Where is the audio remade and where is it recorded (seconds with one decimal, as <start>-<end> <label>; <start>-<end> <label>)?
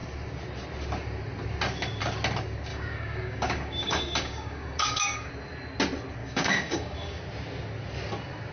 0.0-2.7 recorded; 2.7-5.3 remade; 5.3-6.2 recorded; 6.2-7.2 remade; 7.2-8.5 recorded